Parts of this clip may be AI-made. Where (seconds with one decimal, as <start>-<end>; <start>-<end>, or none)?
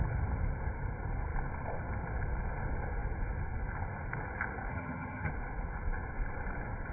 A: 4.7-5.3